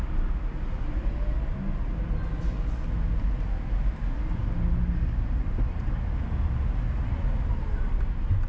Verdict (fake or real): real